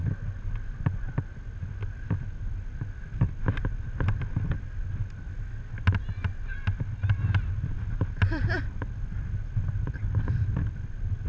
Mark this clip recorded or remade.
recorded